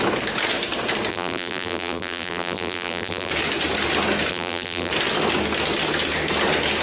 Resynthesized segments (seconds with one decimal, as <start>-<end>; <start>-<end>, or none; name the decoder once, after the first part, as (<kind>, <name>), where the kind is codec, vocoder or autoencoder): 1.1-3.3 (vocoder, BigVGAN v2); 4.3-4.9